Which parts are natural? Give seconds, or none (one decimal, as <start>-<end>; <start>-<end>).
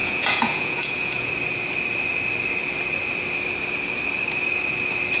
1.3-5.2